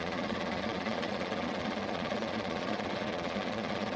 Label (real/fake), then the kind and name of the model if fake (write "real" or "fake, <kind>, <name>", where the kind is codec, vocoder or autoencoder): fake, vocoder, Vocos